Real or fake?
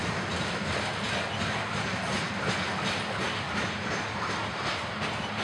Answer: real